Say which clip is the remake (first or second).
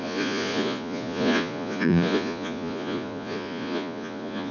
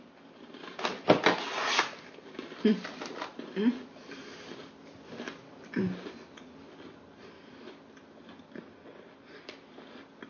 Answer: first